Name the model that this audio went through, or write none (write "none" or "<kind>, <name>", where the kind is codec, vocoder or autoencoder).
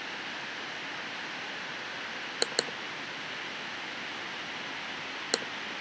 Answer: none